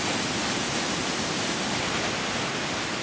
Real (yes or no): yes